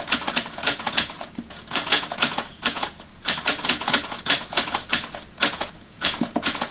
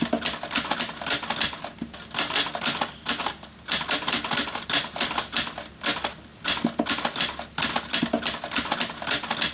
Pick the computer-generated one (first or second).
first